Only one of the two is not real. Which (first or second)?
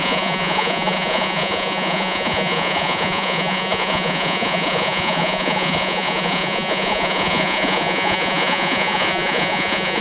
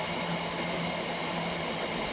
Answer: first